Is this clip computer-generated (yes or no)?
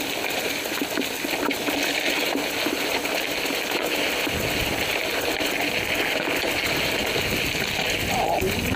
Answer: no